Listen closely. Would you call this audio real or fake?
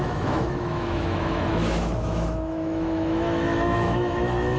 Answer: fake